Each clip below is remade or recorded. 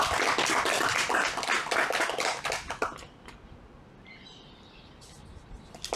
recorded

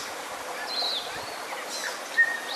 recorded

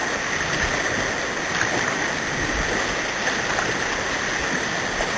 recorded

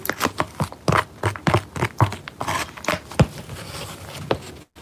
recorded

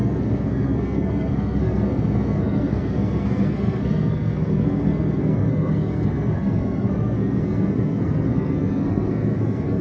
remade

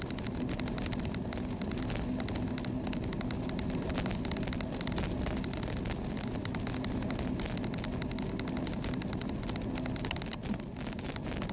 recorded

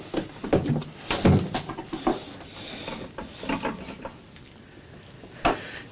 recorded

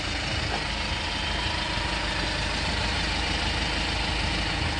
recorded